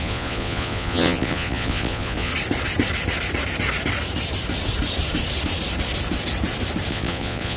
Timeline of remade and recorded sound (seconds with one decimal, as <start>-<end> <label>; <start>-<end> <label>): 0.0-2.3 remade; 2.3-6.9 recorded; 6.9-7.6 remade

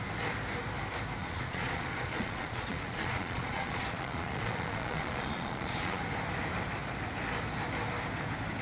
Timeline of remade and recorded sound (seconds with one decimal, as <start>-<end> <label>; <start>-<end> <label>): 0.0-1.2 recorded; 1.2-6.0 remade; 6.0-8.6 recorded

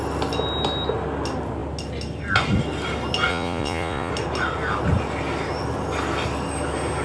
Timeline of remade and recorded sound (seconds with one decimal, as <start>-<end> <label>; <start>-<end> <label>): 0.0-3.3 recorded; 3.3-4.1 remade; 4.1-7.0 recorded

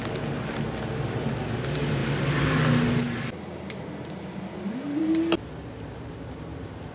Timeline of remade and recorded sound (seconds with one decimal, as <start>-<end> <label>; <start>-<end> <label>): 0.0-6.9 recorded